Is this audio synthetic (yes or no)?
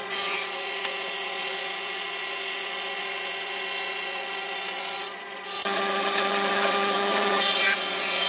yes